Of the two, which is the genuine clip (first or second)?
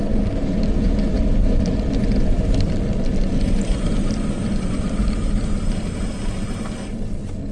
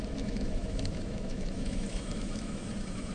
first